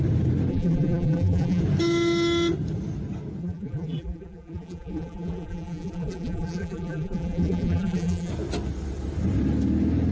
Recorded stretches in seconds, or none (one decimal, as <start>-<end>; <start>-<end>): 0.0-0.5; 1.6-3.4; 8.3-10.1